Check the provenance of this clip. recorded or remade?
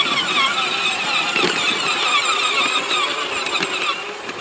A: recorded